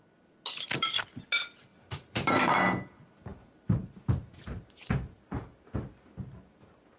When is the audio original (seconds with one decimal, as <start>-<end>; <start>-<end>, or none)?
0.0-1.7; 2.5-3.3; 5.7-7.0